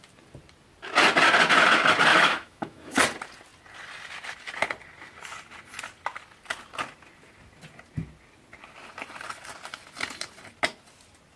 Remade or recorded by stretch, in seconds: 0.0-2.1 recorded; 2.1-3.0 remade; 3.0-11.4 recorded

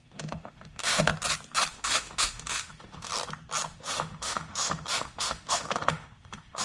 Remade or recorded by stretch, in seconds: 0.0-1.1 remade; 1.1-1.7 recorded; 1.7-3.1 remade; 3.1-3.7 recorded; 3.7-6.6 remade